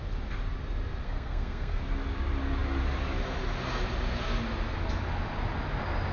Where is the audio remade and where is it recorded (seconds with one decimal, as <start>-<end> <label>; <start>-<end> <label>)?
0.0-1.0 recorded; 1.0-1.8 remade; 1.8-6.1 recorded